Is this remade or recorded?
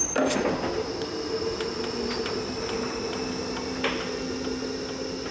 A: recorded